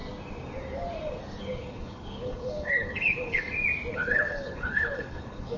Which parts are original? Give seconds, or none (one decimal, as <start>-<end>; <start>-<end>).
0.0-1.4; 3.4-3.9